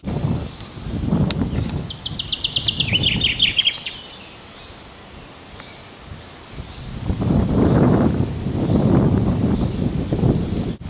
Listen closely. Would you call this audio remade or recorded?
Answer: recorded